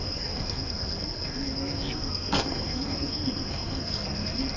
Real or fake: fake